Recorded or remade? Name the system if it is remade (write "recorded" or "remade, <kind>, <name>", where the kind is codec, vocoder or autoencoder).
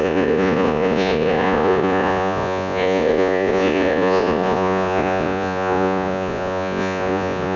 remade, vocoder, Vocos